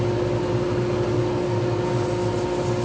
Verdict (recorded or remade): recorded